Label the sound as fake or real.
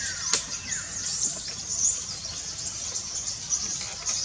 real